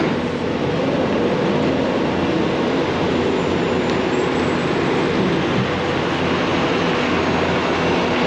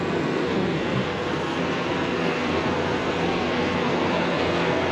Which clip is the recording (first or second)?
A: first